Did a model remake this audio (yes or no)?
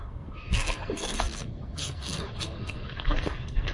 yes